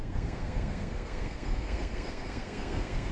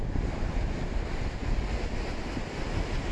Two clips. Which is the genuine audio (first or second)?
second